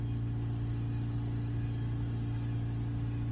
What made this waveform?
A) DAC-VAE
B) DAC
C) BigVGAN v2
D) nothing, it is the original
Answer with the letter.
D